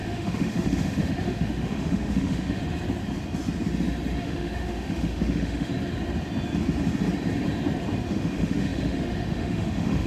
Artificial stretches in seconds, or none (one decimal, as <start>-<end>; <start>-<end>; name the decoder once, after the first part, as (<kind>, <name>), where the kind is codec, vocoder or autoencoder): 0.0-2.6 (autoencoder, DAC-VAE); 4.2-5.7; 8.1-10.1